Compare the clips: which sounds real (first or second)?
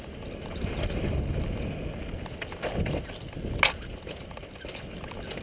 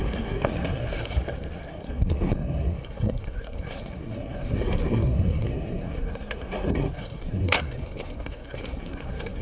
first